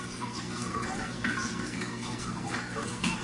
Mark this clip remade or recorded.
remade